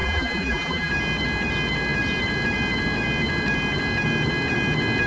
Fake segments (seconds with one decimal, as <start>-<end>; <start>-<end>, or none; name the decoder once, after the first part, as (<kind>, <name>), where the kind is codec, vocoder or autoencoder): 0.0-0.9 (vocoder, BigVGAN v2)

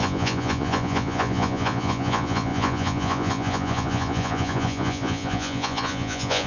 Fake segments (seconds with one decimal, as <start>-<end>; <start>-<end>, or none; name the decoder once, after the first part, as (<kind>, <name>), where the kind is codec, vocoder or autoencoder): 0.0-6.5 (vocoder, Vocos)

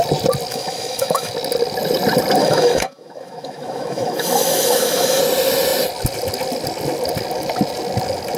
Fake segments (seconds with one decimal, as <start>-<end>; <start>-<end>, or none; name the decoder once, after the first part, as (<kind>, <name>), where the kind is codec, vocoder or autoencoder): 0.5-1.3 (autoencoder, DAC-VAE); 2.4-5.2

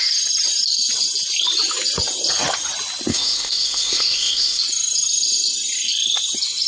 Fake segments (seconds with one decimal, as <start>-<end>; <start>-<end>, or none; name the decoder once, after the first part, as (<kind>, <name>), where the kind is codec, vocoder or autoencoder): 3.1-4.6 (codec, ZipCodec)